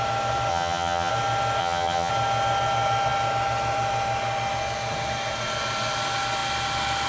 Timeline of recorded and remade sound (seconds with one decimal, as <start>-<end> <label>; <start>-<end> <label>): 0.0-0.5 recorded; 0.5-1.1 remade; 1.1-1.6 recorded; 1.6-2.1 remade; 2.1-7.1 recorded